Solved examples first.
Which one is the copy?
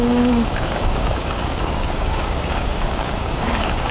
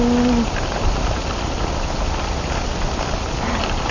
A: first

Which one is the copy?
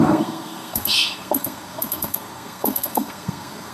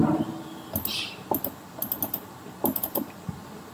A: first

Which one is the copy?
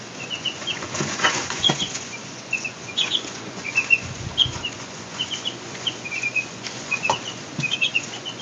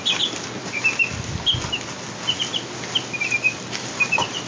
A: first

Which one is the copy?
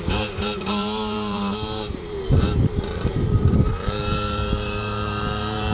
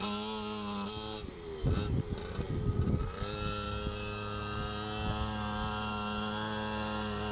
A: first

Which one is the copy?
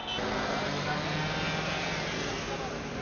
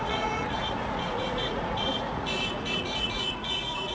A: second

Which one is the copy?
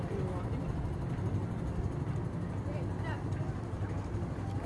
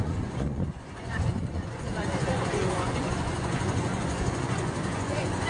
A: second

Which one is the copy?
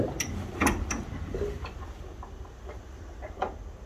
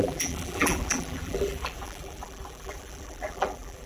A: second